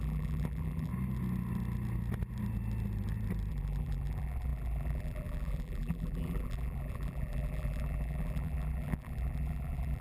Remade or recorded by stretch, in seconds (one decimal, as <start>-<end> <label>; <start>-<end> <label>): 0.0-0.9 remade; 0.9-3.5 recorded; 3.5-10.0 remade

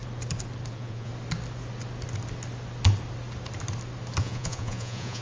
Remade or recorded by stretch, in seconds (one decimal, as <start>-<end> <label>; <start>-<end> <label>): 0.0-0.7 recorded; 0.7-1.1 remade; 1.1-4.2 recorded; 4.2-5.2 remade

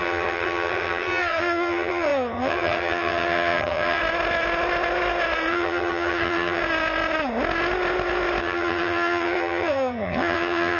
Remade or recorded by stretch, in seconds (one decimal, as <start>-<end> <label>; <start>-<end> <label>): 0.0-4.0 remade; 4.0-5.5 recorded; 5.5-6.6 remade; 6.6-8.4 recorded; 8.4-10.8 remade